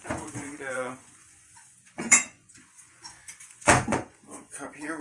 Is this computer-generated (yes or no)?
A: yes